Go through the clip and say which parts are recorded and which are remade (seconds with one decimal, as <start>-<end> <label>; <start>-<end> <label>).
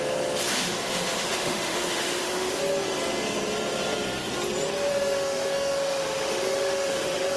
0.0-0.5 recorded; 0.5-2.6 remade; 2.6-4.9 recorded; 4.9-7.4 remade